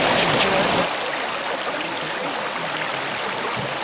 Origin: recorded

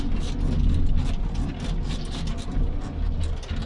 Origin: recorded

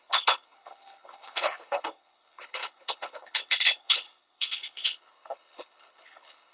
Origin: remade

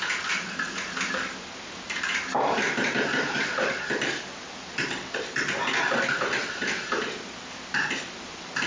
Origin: recorded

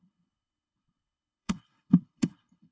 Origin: remade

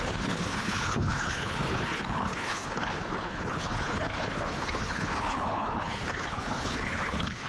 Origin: remade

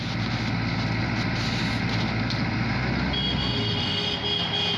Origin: recorded